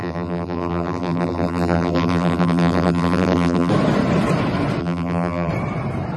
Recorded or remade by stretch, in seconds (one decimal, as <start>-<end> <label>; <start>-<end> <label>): 0.0-3.7 remade; 3.7-4.8 recorded; 4.8-5.5 remade; 5.5-6.2 recorded